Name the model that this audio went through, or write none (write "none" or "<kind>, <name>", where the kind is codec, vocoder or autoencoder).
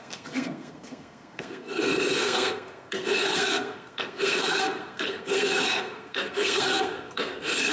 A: codec, SNAC